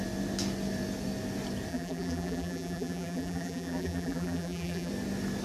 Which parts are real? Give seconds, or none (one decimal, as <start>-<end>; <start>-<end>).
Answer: 0.0-1.7; 4.9-5.4